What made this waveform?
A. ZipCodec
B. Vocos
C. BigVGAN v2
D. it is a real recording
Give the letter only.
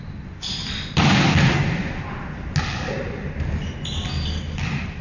D